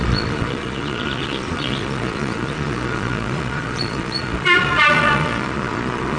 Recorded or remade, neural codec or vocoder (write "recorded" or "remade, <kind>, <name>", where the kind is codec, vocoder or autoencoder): remade, vocoder, Vocos